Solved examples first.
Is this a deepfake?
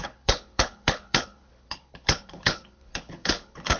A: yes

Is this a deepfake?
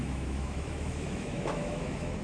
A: yes